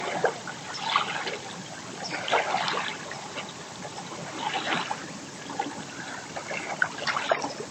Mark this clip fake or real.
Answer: real